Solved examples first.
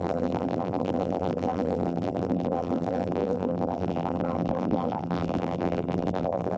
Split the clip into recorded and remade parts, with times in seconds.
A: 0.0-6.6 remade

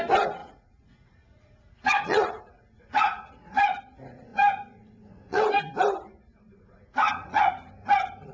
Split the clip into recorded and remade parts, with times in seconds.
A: 0.0-0.4 recorded; 0.4-3.8 remade; 3.8-4.3 recorded; 4.3-5.6 remade; 5.6-6.3 recorded; 6.3-7.5 remade; 7.5-8.3 recorded

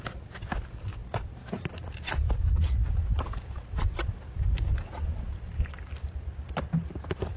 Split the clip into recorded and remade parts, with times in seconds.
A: 0.0-7.4 recorded